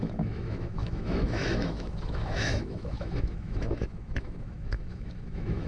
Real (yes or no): no